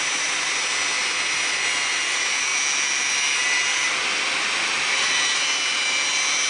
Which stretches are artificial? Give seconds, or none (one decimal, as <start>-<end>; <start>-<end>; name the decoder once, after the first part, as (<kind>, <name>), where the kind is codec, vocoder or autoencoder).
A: none